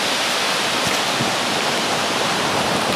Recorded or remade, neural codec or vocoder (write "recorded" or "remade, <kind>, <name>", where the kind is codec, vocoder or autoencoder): recorded